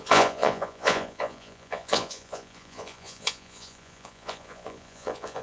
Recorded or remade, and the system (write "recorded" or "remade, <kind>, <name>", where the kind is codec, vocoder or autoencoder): remade, vocoder, Vocos